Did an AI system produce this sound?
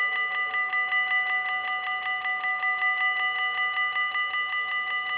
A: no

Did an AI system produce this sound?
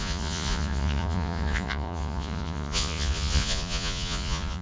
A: yes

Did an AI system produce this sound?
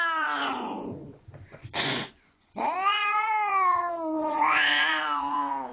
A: yes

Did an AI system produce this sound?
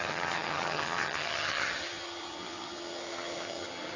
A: yes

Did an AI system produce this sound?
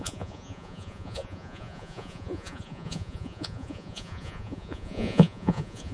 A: yes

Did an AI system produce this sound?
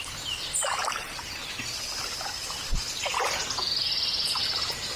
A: no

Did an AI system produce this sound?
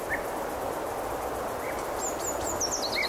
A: no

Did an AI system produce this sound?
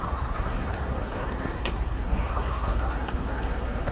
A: yes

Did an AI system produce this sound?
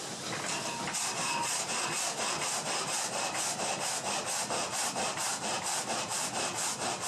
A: yes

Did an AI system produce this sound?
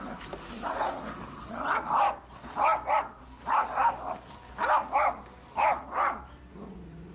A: no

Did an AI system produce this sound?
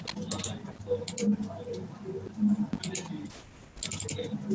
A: no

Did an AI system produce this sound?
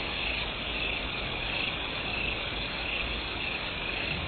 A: yes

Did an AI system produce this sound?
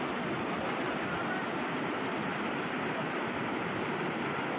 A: no